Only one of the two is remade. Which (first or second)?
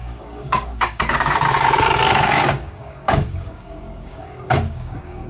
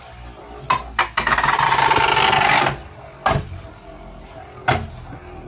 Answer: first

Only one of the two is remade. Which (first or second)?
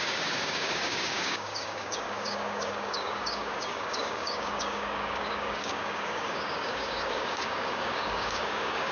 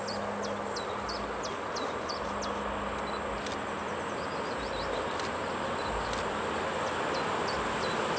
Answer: first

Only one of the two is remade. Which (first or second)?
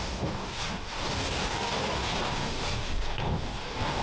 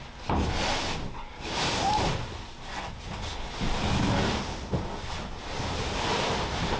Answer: first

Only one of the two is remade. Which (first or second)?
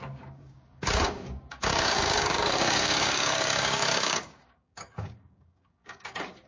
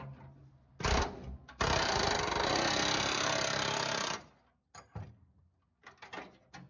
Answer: first